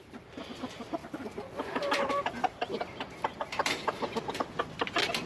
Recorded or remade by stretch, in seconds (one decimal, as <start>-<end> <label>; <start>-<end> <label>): 0.0-5.3 recorded

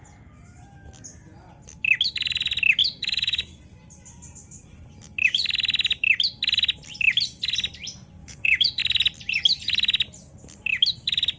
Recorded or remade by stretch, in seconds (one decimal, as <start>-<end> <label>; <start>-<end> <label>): 0.0-2.8 recorded; 2.8-3.6 remade; 3.6-8.2 recorded; 8.2-8.8 remade; 8.8-11.4 recorded

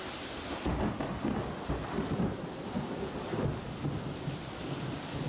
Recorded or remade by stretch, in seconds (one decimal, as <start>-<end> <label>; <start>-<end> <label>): 0.0-1.4 recorded; 1.4-3.3 remade; 3.3-5.3 recorded

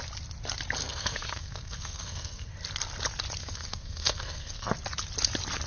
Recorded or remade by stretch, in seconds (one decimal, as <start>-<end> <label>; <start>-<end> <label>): 0.0-0.8 recorded; 0.8-2.5 remade; 2.5-3.4 recorded; 3.4-4.7 remade; 4.7-5.7 recorded

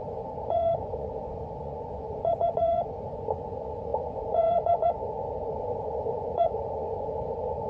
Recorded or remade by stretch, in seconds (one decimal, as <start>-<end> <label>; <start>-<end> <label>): 0.0-7.7 remade

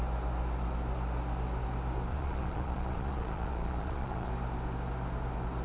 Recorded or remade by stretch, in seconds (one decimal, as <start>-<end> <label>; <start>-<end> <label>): 0.0-2.1 recorded; 2.1-4.3 remade; 4.3-5.6 recorded

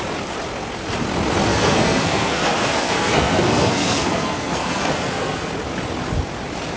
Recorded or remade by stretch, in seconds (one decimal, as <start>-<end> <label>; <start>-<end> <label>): 0.0-1.5 recorded; 1.5-5.5 remade; 5.5-6.8 recorded